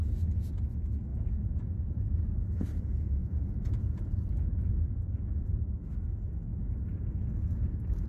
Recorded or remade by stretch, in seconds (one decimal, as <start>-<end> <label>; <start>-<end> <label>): 0.0-1.1 recorded; 1.1-1.9 remade; 1.9-3.2 recorded; 3.2-5.5 remade; 5.5-8.1 recorded